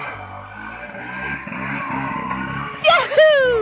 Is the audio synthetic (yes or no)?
no